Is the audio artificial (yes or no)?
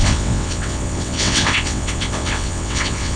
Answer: yes